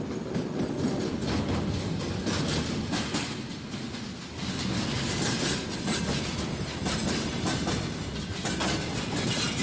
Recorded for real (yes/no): yes